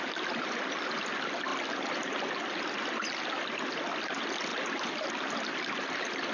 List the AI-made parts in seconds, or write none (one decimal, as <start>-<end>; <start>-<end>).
4.5-5.1